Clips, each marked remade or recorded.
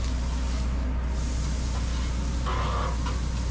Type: recorded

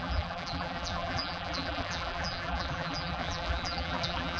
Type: remade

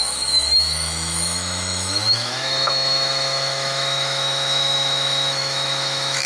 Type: remade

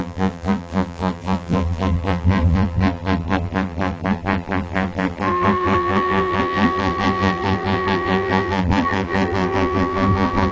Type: remade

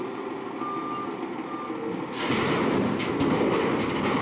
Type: recorded